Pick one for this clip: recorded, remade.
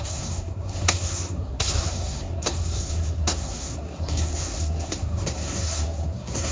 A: remade